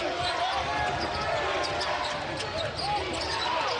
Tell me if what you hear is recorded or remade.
recorded